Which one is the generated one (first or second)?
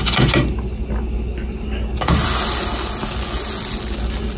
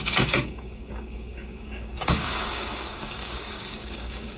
second